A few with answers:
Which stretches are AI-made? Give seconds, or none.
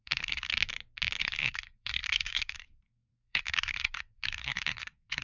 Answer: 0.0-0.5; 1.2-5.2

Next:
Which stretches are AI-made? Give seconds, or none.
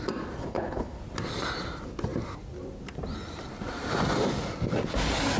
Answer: 0.4-1.0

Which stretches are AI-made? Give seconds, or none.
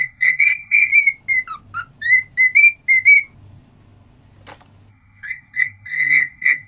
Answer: 0.0-0.9; 4.9-6.7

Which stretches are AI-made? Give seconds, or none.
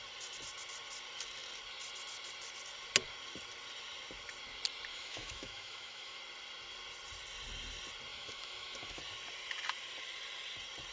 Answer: 4.9-6.2; 8.1-9.0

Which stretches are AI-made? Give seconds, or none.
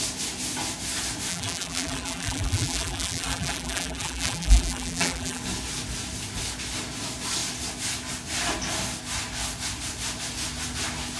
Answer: 1.3-5.4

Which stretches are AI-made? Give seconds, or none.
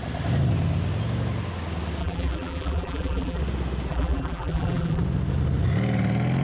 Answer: 2.0-3.4; 3.9-5.0